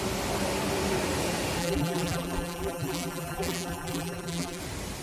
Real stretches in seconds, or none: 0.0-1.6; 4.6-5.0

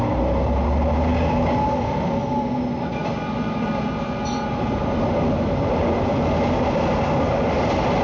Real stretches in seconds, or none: 0.0-8.0

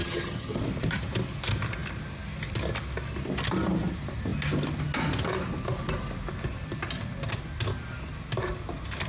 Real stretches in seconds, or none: 0.6-9.1